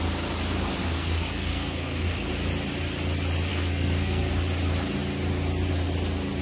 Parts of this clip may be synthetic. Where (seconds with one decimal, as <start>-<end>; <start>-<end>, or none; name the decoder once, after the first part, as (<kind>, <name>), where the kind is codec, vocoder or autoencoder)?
0.8-2.3 (codec, SNAC); 3.5-4.3